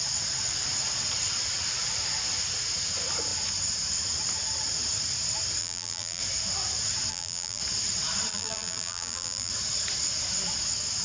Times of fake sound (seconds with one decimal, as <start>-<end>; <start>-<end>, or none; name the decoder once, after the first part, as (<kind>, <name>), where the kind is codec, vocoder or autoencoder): 5.6-6.2 (vocoder, BigVGAN v2); 7.1-7.6; 8.3-9.5